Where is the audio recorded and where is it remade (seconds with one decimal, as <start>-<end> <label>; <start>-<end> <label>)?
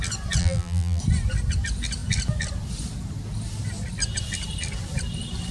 0.0-0.4 recorded; 0.4-1.0 remade; 1.0-5.5 recorded